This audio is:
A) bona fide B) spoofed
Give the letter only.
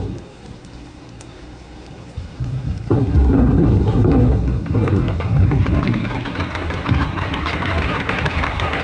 B